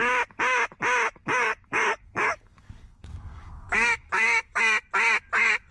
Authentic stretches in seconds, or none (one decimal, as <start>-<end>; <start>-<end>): 0.0-1.2; 4.6-5.7